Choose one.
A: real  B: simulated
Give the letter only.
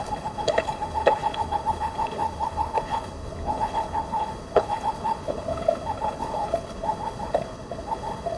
B